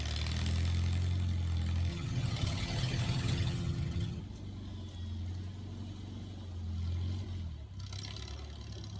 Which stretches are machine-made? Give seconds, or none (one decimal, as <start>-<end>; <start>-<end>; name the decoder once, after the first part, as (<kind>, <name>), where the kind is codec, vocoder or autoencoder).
1.9-4.2 (vocoder, HiFi-GAN)